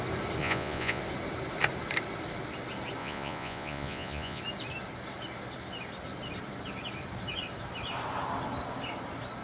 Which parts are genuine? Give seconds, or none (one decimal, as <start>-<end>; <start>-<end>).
0.0-0.4; 1.0-3.0; 4.4-9.4